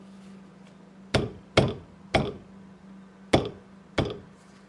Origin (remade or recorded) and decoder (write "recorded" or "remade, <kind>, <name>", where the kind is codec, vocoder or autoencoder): recorded